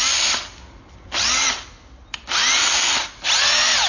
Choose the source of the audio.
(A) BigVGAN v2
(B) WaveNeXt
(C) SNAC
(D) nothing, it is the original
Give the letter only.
D